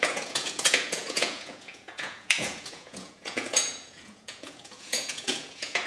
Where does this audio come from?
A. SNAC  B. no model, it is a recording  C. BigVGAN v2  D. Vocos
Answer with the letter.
D